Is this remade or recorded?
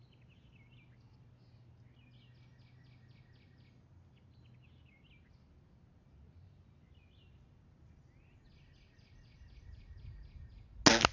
recorded